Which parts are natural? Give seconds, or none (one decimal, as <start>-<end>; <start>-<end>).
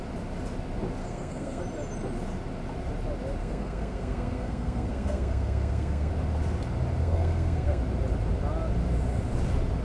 0.0-1.0; 1.6-3.4; 6.1-7.0; 7.8-9.8